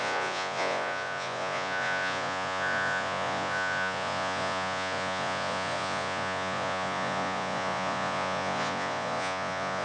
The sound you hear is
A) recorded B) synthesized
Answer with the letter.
B